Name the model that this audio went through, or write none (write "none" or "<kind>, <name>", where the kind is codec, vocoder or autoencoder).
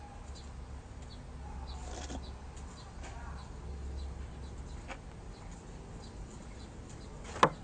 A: none